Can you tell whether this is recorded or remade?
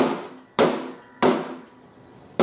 recorded